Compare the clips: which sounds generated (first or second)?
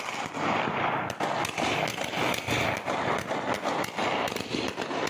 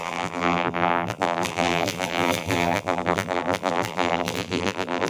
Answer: second